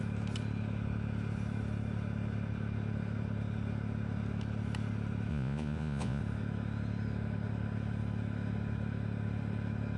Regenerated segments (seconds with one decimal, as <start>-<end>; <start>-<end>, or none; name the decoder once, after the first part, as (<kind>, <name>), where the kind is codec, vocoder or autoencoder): 5.3-6.2 (vocoder, Vocos)